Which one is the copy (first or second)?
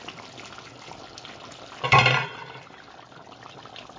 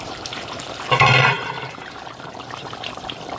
second